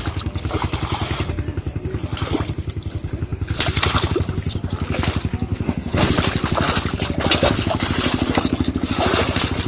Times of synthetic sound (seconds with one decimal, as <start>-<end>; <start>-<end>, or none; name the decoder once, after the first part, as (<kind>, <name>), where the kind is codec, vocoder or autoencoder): 5.5-6.1 (codec, SNAC)